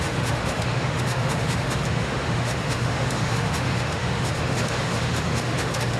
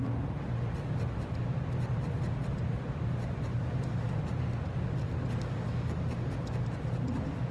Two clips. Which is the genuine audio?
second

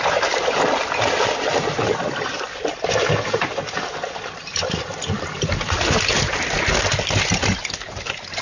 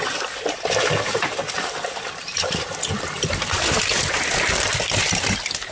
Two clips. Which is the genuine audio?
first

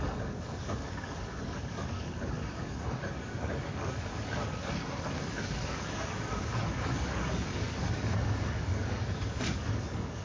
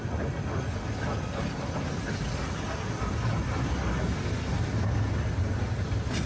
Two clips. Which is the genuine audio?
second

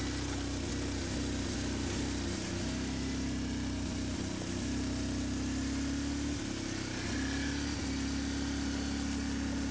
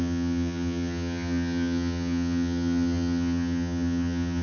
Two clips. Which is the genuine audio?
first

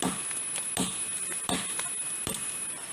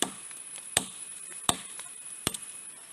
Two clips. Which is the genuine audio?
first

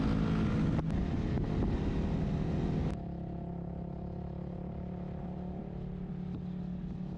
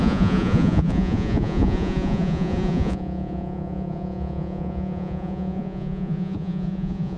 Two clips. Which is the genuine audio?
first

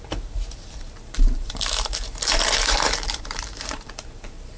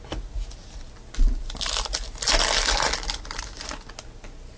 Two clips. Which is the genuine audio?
second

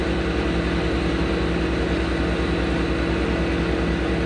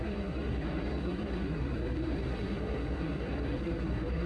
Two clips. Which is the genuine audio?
first